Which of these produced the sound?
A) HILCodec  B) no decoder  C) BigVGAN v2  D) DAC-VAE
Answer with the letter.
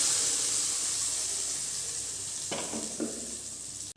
B